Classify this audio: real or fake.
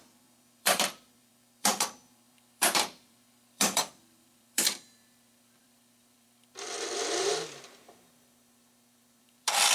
fake